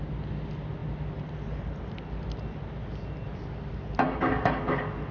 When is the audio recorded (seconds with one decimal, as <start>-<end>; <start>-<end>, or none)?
0.0-5.1